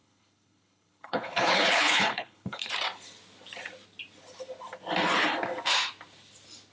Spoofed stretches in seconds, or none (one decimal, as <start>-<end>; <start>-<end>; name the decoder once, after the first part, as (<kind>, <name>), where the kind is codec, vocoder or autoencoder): 0.0-2.7 (codec, HILCodec)